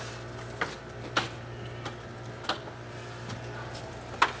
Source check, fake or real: real